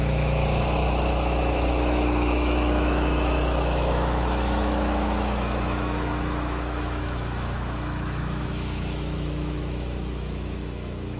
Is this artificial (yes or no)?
yes